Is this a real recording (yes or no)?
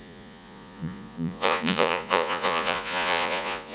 no